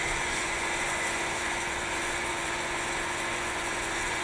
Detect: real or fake fake